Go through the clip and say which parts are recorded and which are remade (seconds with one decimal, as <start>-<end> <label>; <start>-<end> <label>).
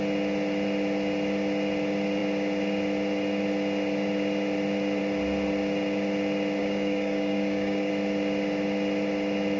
0.0-6.6 recorded; 6.6-7.9 remade; 7.9-9.6 recorded